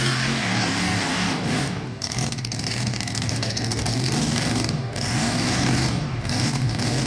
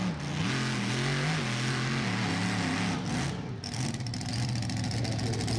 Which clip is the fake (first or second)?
first